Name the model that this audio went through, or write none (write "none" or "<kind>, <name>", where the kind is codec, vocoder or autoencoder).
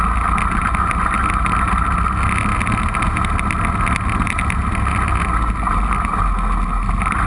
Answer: none